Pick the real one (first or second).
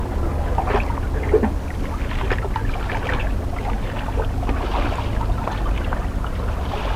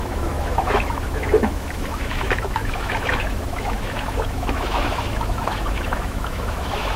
first